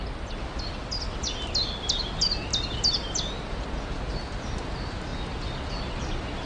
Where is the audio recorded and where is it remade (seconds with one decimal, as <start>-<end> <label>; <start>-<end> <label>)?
0.0-6.5 recorded

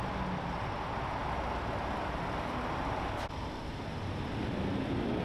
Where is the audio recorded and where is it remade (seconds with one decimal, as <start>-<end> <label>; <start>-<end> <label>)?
0.0-5.2 recorded

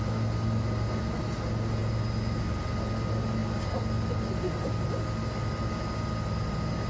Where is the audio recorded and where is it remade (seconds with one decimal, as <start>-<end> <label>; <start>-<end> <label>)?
0.0-6.9 recorded

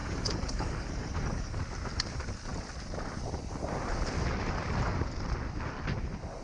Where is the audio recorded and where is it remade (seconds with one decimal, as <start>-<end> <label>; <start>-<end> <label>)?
0.0-1.6 remade; 1.6-6.4 recorded

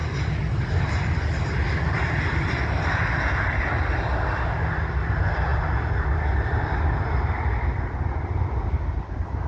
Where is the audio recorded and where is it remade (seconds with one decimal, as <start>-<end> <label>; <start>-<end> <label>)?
0.0-9.5 recorded

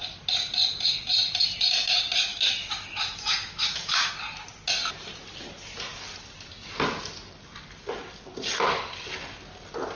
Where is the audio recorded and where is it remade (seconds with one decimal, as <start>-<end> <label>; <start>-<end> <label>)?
0.0-2.3 recorded; 2.3-4.1 remade; 4.1-10.0 recorded

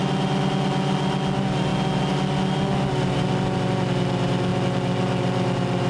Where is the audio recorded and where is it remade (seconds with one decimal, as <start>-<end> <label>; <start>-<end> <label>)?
0.0-5.9 recorded